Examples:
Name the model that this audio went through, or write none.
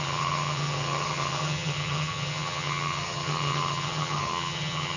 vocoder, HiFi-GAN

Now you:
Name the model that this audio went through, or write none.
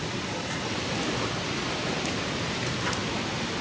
vocoder, BigVGAN v2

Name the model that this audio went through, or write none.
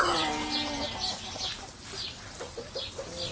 none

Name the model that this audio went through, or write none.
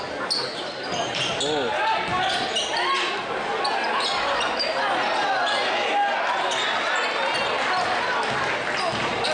none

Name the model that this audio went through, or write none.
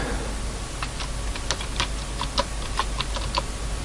none